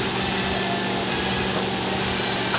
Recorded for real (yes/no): yes